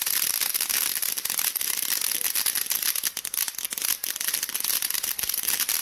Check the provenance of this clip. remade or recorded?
recorded